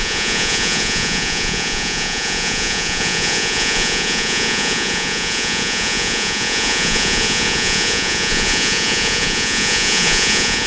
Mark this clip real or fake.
fake